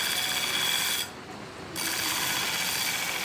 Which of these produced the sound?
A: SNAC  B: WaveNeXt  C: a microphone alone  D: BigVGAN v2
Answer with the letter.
C